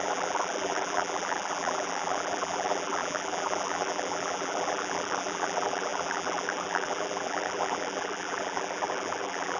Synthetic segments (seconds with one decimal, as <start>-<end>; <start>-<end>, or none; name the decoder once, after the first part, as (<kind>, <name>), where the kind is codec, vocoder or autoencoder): 0.0-9.6 (vocoder, BigVGAN v2)